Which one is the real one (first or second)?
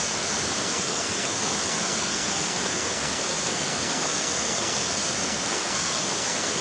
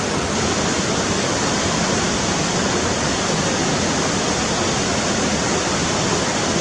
second